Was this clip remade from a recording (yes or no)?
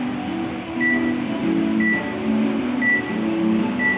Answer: no